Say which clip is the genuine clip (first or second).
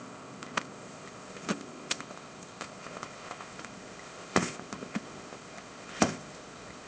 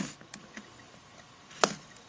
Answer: second